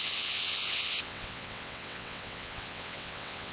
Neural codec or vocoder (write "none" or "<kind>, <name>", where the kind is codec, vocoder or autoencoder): vocoder, WaveNeXt